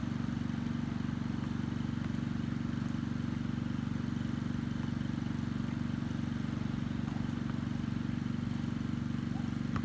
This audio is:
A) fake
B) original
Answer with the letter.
B